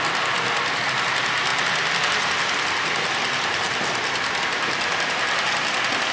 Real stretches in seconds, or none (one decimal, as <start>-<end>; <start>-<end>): 0.0-6.1